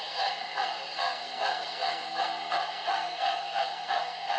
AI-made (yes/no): yes